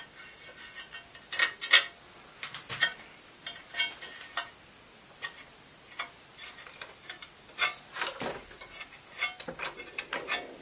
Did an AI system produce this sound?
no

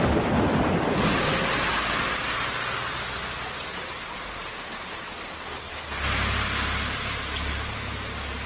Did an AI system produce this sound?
no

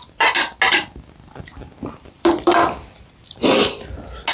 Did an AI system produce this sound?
no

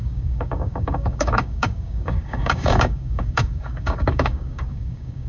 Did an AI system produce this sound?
yes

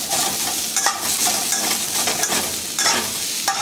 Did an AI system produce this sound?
no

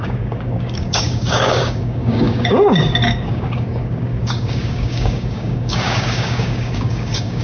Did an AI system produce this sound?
yes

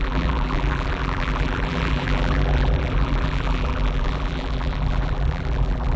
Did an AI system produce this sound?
yes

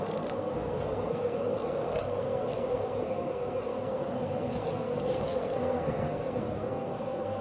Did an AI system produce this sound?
yes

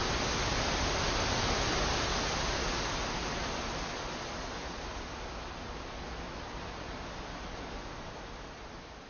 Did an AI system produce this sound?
no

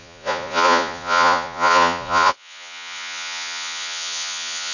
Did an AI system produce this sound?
yes